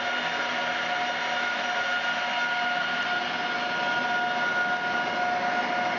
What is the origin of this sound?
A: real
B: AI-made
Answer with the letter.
A